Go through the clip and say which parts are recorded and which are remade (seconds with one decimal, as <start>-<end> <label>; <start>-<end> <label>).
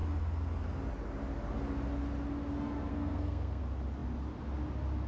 0.0-2.9 recorded; 2.9-3.6 remade; 3.6-5.1 recorded